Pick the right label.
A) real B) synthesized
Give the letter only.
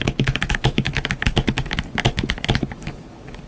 B